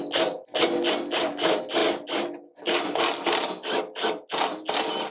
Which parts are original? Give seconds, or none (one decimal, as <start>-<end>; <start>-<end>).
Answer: 0.0-5.1

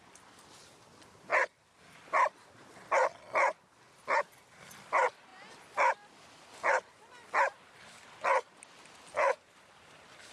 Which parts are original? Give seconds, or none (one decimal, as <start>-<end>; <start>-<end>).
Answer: 0.0-10.3